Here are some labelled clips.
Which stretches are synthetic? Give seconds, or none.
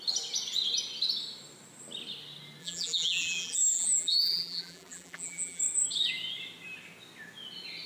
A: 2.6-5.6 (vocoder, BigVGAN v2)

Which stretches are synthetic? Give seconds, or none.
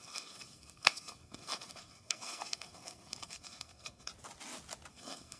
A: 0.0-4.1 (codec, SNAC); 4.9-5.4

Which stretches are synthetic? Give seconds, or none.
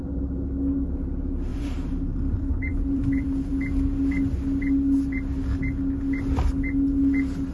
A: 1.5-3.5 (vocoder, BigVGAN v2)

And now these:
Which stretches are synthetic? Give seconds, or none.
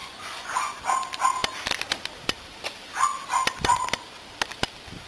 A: 0.0-0.8 (vocoder, Vocos)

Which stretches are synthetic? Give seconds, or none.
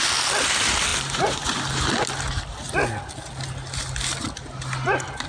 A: none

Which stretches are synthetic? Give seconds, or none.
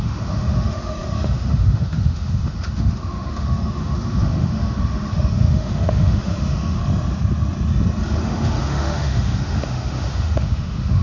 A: 0.0-6.8 (autoencoder, DAC-VAE); 8.2-11.0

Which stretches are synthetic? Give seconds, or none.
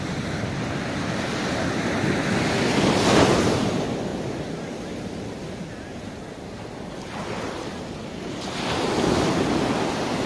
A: none